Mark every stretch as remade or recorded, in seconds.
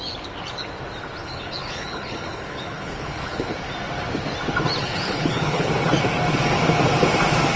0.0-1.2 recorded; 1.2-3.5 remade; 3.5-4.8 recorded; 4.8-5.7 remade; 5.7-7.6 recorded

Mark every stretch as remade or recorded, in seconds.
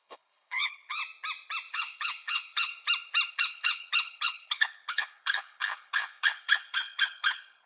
0.0-1.0 remade; 1.0-1.7 recorded; 1.7-2.7 remade; 2.7-3.3 recorded; 3.3-7.7 remade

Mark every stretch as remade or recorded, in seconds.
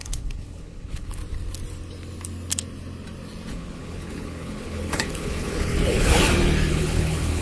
0.0-1.2 remade; 1.2-3.5 recorded; 3.5-6.2 remade; 6.2-6.7 recorded; 6.7-7.4 remade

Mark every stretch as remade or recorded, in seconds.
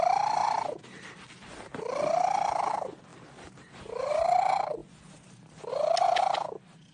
0.0-6.9 recorded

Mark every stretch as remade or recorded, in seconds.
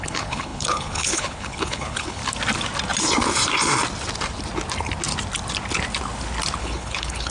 0.0-2.2 remade; 2.2-6.6 recorded; 6.6-7.3 remade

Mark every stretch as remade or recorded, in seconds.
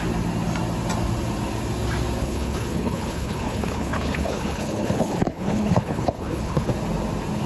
0.0-2.2 recorded; 2.2-6.7 remade; 6.7-7.5 recorded